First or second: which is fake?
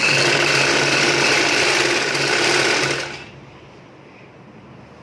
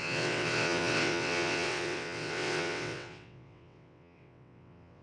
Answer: second